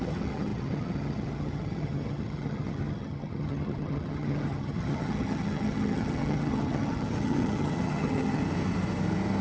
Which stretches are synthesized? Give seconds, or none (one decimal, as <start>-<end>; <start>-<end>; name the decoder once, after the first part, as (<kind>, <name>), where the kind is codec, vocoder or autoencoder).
0.0-8.4 (vocoder, HiFi-GAN)